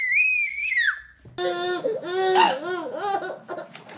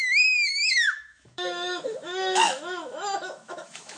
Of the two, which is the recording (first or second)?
first